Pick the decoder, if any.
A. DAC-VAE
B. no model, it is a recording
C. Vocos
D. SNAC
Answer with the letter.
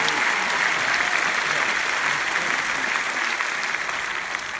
B